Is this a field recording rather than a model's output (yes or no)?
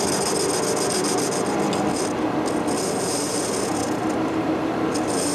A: yes